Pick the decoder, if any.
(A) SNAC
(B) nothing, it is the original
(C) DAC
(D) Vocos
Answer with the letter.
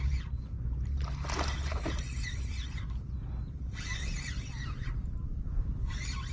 B